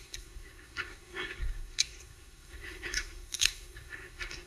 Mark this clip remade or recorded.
remade